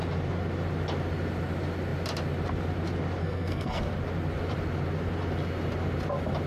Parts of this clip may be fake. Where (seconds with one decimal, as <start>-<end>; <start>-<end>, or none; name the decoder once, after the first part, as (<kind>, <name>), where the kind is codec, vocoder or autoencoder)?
3.2-3.8 (codec, SNAC)